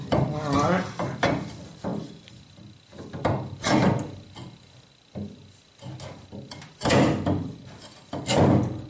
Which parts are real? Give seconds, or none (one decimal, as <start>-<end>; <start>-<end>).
0.0-8.9